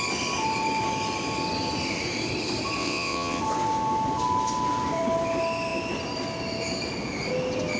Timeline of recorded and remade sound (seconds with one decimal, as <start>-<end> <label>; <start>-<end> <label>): 0.0-2.8 recorded; 2.8-3.4 remade; 3.4-7.8 recorded